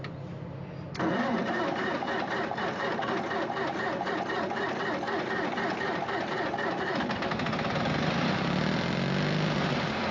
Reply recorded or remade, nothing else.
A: remade